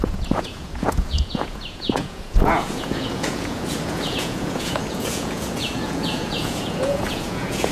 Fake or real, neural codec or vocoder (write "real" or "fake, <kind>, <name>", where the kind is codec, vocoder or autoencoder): fake, vocoder, Vocos